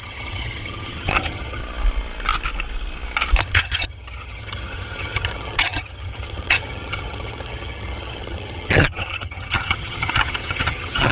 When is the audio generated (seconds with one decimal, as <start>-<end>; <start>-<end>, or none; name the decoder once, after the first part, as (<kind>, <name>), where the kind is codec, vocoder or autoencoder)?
0.0-1.6 (vocoder, HiFi-GAN); 3.4-11.1